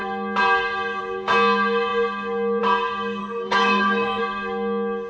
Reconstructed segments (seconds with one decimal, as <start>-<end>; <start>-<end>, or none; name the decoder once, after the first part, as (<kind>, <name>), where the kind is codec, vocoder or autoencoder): 3.2-4.2 (codec, SNAC)